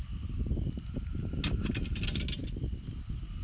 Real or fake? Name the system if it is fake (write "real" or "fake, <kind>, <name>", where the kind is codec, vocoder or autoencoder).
real